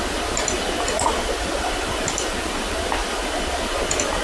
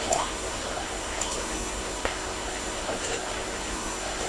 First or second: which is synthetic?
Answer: second